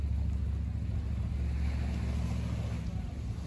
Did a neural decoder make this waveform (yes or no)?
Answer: no